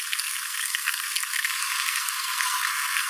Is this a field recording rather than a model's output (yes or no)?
no